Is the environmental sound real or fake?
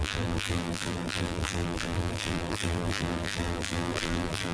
fake